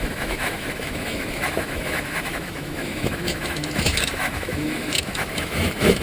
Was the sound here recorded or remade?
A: remade